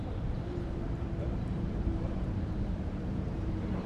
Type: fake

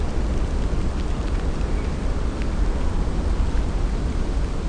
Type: real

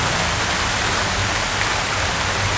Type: real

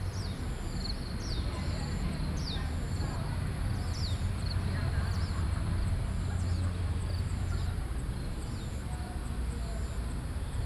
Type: real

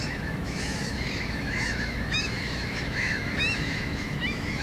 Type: fake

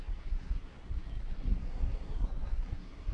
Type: fake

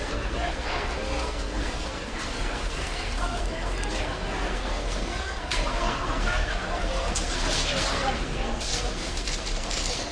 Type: fake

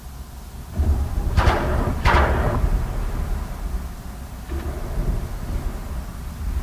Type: real